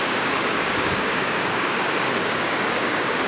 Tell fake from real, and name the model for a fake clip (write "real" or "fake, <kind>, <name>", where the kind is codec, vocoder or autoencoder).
fake, codec, DAC